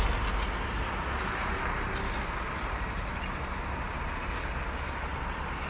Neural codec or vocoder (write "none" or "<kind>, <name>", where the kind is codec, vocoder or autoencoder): none